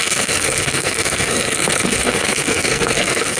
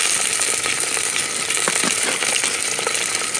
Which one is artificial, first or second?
first